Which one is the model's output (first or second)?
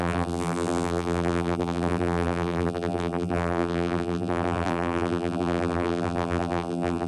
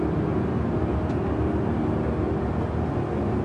first